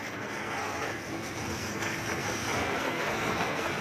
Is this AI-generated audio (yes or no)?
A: yes